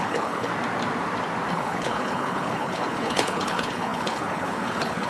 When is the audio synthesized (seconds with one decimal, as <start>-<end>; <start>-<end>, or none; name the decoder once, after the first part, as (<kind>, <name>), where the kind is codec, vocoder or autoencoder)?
0.0-0.5 (codec, HILCodec); 1.5-5.1